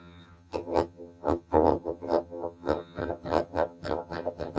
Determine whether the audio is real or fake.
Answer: fake